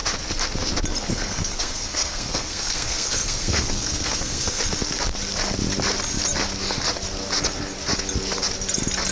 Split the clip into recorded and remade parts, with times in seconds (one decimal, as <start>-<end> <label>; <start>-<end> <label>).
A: 0.0-1.1 recorded; 1.1-4.6 remade; 4.6-9.1 recorded